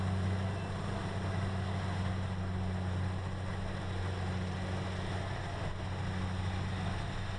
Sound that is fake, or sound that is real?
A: real